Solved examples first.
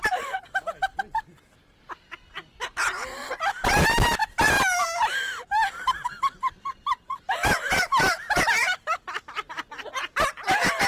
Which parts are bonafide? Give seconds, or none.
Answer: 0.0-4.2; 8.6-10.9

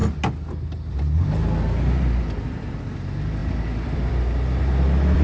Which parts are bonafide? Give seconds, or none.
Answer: 0.0-2.2

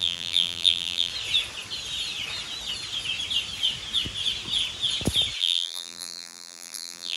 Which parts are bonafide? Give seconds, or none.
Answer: 1.1-5.4

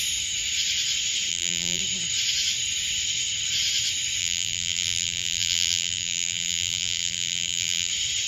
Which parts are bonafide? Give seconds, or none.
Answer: 0.0-1.3; 1.8-4.2; 7.9-8.3

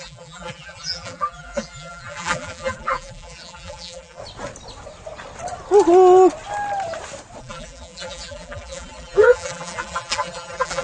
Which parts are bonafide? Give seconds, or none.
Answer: 4.2-7.4

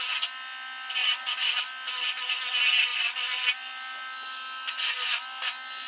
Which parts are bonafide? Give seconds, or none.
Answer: 0.0-1.0; 1.6-5.9